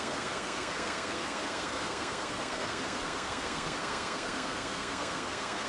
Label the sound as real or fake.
fake